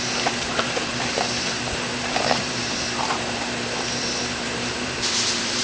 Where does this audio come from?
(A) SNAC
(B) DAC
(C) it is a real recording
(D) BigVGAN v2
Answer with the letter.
D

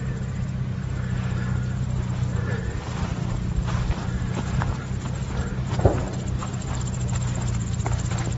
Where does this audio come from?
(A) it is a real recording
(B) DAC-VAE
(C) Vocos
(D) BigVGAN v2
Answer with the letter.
A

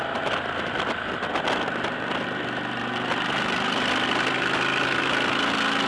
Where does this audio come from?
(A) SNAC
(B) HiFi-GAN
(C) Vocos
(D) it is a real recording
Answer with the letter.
D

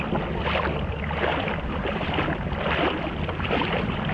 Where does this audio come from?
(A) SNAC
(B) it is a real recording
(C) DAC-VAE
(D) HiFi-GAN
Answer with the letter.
B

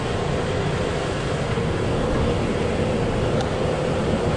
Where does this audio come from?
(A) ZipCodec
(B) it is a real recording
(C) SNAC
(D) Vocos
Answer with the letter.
B